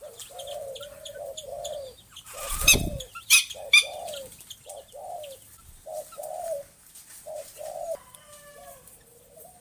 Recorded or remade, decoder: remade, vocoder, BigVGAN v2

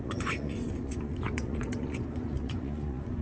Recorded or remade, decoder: remade, vocoder, Vocos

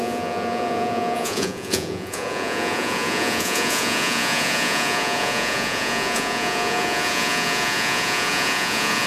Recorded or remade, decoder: remade, vocoder, Vocos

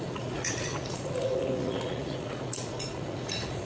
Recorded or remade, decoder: remade, vocoder, Vocos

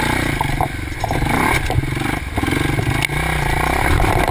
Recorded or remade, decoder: recorded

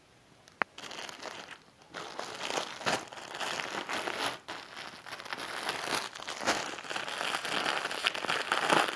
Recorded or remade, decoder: recorded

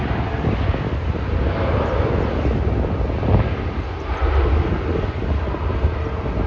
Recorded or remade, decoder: recorded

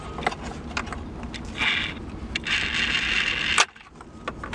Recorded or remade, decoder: recorded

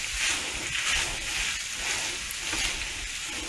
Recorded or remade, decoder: recorded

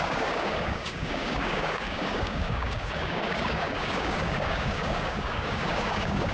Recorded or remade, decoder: remade, codec, DAC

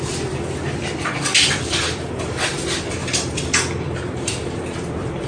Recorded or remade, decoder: remade, vocoder, BigVGAN v2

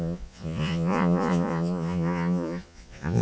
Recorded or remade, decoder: remade, vocoder, Vocos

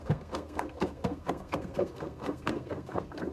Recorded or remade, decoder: remade, codec, SNAC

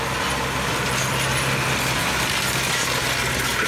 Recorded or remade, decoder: recorded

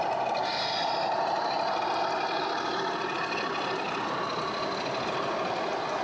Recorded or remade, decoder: recorded